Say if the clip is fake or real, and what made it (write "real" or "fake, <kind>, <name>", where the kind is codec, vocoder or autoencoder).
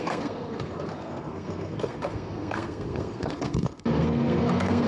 fake, codec, SNAC